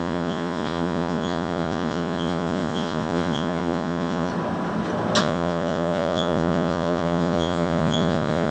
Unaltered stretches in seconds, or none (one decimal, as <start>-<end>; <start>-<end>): 4.3-5.2

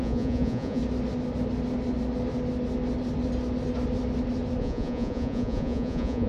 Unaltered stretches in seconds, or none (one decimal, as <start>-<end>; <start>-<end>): 0.8-4.6

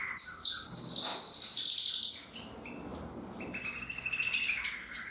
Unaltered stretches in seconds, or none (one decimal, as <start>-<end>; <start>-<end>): 0.0-5.1